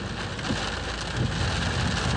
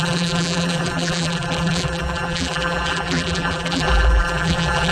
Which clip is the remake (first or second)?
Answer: second